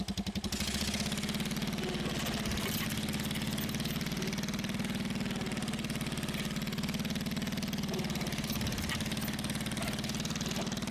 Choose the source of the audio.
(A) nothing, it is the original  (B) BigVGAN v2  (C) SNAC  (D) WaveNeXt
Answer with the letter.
A